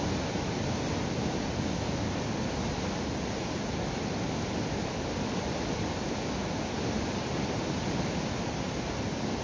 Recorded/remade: recorded